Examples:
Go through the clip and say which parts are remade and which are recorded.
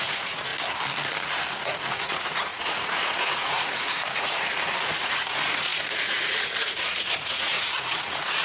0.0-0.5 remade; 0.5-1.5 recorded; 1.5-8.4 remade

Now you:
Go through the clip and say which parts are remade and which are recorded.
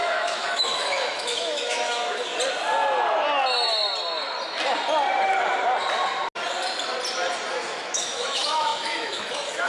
0.0-2.3 remade; 2.3-7.5 recorded; 7.5-9.7 remade